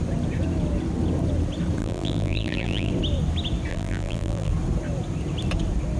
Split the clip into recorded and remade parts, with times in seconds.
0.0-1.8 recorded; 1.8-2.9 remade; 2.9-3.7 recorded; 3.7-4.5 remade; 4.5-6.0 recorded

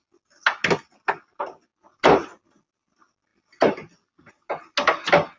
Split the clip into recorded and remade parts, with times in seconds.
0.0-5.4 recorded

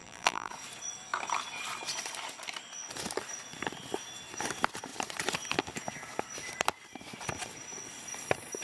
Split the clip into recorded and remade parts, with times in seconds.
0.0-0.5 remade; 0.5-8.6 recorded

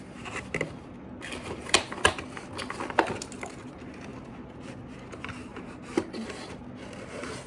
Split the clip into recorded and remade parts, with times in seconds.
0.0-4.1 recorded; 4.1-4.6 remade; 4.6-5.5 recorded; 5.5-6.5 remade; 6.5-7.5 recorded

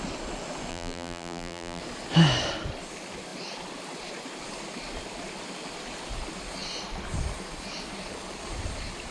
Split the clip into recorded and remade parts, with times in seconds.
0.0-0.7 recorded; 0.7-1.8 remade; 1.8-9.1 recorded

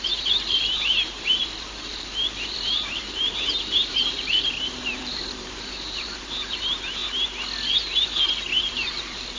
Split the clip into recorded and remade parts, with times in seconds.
0.0-7.0 remade; 7.0-8.6 recorded; 8.6-9.4 remade

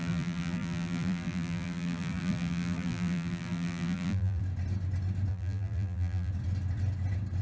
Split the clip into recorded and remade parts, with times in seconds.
0.0-4.4 remade; 4.4-5.3 recorded; 5.3-6.3 remade; 6.3-7.4 recorded

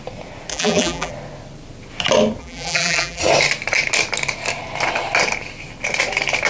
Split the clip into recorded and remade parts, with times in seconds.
0.0-0.5 recorded; 0.5-1.1 remade; 1.1-2.4 recorded; 2.4-3.2 remade; 3.2-6.5 recorded